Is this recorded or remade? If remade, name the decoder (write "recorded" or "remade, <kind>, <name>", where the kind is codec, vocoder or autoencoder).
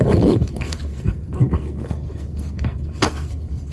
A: remade, codec, SNAC